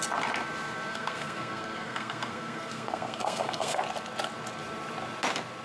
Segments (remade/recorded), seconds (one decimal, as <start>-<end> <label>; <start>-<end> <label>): 0.0-0.9 recorded; 0.9-3.8 remade; 3.8-5.6 recorded